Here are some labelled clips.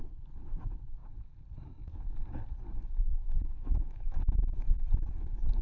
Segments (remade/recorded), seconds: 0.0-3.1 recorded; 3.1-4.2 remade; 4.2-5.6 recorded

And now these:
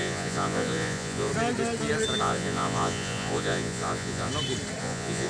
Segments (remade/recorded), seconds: 0.0-1.3 remade; 1.3-2.2 recorded; 2.2-4.3 remade; 4.3-4.8 recorded; 4.8-5.3 remade

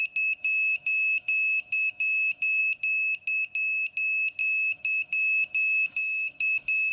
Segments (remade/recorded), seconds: 0.0-0.4 recorded; 0.4-2.6 remade; 2.6-4.4 recorded; 4.4-6.9 remade

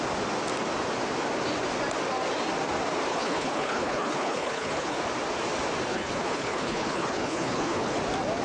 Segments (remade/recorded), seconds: 0.0-3.1 recorded; 3.1-5.0 remade; 5.0-5.9 recorded; 5.9-8.0 remade; 8.0-8.4 recorded

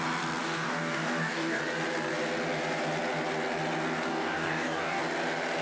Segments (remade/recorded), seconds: 0.0-0.4 recorded; 0.4-1.6 remade; 1.6-4.1 recorded; 4.1-5.0 remade; 5.0-5.6 recorded

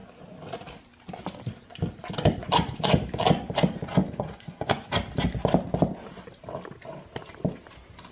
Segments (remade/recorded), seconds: 0.0-2.4 recorded; 2.4-3.0 remade; 3.0-4.0 recorded; 4.0-4.9 remade; 4.9-8.1 recorded

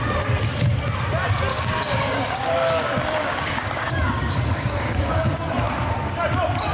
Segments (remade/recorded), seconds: 0.0-1.5 recorded; 1.5-5.5 remade; 5.5-6.7 recorded